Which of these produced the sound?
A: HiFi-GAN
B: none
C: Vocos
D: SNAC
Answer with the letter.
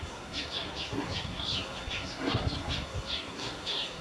D